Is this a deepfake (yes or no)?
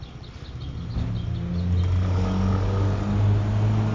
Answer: no